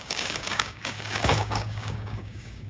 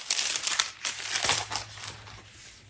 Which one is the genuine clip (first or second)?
second